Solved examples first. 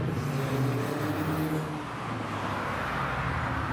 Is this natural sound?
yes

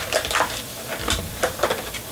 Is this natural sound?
yes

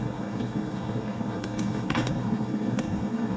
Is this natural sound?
no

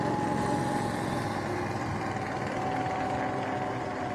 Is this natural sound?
yes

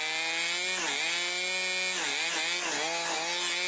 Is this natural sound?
yes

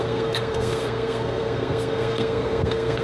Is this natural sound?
no